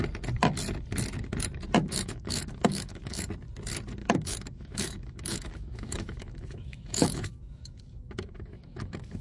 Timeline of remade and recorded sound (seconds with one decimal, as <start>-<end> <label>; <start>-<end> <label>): 0.0-1.8 recorded; 1.8-3.3 remade; 3.3-4.0 recorded; 4.0-9.2 remade